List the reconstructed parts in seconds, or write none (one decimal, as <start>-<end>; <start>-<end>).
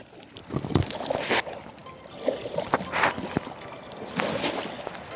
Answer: none